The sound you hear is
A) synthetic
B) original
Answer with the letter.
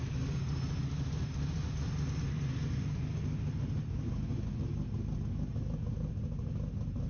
B